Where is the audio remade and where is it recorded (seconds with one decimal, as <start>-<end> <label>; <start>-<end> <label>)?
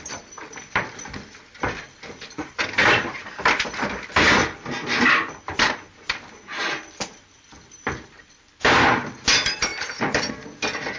0.0-9.7 recorded; 9.7-10.3 remade; 10.3-11.0 recorded